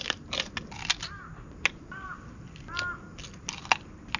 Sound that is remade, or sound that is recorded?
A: recorded